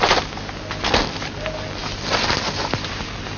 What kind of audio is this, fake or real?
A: real